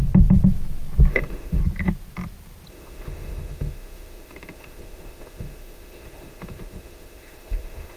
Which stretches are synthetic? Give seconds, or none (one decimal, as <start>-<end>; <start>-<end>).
1.1-1.6; 2.7-8.0